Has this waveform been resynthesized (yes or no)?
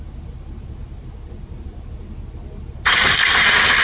yes